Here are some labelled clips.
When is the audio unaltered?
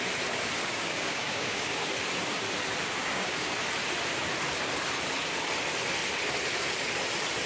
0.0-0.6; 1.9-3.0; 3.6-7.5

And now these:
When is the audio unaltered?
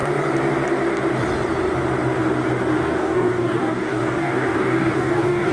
0.0-3.0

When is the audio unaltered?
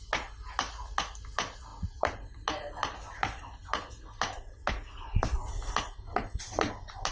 0.0-7.1